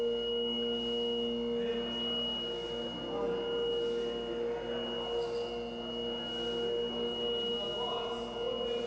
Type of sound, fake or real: real